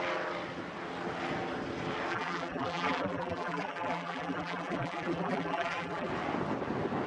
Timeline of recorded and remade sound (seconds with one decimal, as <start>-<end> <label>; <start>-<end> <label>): 0.0-2.1 recorded; 2.1-6.1 remade; 6.1-7.1 recorded